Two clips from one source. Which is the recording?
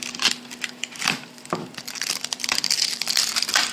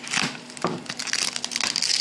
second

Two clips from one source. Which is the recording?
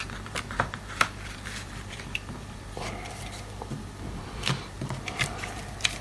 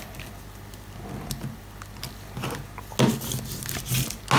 second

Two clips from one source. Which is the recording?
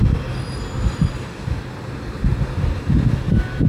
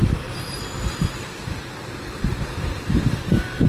first